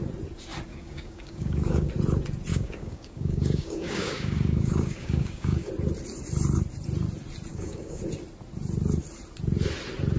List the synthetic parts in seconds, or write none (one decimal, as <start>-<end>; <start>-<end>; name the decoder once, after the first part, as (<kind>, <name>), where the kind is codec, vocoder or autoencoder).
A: 0.7-1.9 (codec, DAC); 2.5-5.7; 7.5-8.0